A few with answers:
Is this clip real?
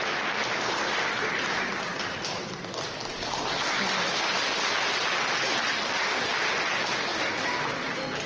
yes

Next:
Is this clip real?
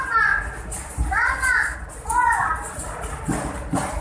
yes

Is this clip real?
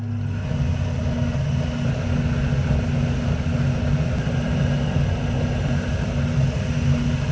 yes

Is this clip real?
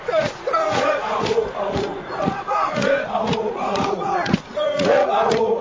no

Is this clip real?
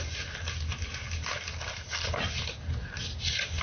yes